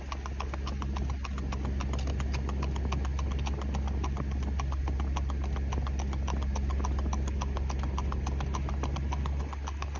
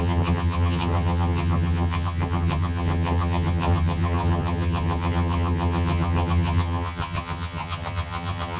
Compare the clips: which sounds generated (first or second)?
second